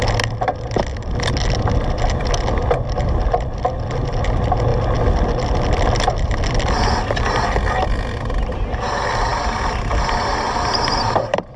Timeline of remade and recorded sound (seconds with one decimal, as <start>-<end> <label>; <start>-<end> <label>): 0.0-11.6 recorded